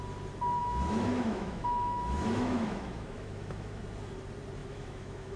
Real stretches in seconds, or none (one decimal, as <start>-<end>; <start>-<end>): 0.0-0.6; 3.8-4.6